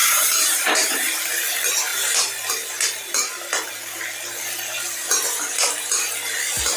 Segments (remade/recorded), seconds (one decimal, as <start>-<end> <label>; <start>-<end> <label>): 0.0-1.3 remade; 1.3-6.8 recorded

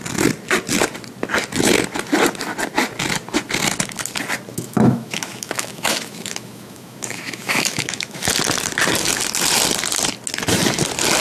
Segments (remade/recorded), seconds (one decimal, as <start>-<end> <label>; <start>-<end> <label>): 0.0-4.5 recorded; 4.5-8.3 remade; 8.3-11.2 recorded